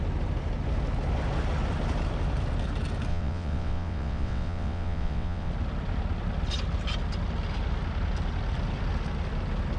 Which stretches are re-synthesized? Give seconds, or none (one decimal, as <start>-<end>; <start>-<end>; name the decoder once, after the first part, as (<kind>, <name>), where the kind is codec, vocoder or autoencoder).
3.1-5.5 (vocoder, WaveNeXt)